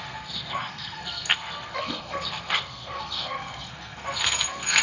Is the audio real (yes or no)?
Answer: no